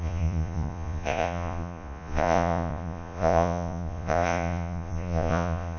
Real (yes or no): no